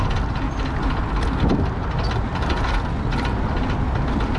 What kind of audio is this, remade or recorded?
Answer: recorded